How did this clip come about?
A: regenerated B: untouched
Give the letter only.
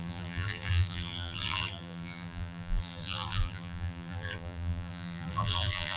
A